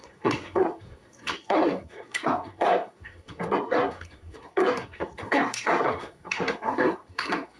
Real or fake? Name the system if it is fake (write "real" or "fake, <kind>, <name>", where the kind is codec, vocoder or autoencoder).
fake, codec, SNAC